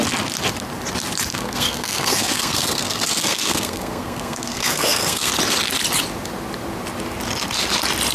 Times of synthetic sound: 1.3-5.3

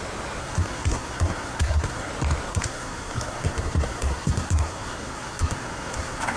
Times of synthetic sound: 0.4-2.1; 2.5-6.4

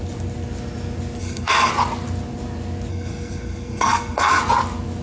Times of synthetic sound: 1.2-1.7; 2.9-4.4

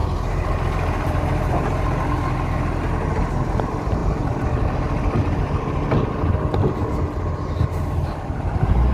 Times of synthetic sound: none